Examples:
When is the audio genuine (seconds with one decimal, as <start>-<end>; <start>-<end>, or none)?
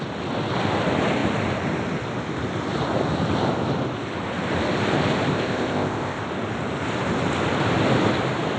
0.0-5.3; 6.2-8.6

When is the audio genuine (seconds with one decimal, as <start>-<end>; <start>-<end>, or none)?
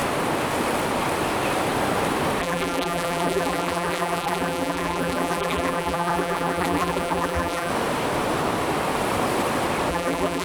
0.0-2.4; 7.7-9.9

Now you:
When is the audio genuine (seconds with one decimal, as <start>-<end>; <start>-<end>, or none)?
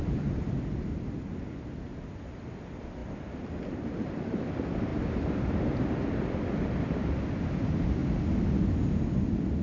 0.9-2.0; 4.9-7.3; 8.0-9.6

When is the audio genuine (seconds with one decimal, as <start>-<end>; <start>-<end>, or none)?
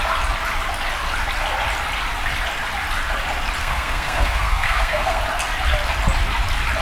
0.0-3.6; 5.2-6.8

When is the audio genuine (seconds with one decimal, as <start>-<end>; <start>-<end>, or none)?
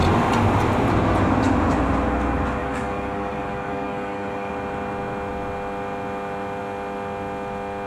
0.0-2.6; 4.5-7.9